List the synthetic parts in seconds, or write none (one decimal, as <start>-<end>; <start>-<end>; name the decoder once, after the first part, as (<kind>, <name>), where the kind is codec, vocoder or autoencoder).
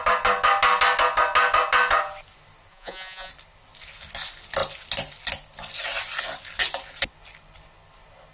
2.7-3.3 (vocoder, Vocos)